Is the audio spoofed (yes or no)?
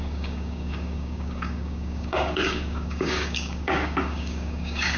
yes